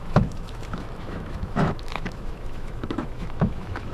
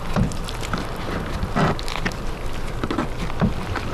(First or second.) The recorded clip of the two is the second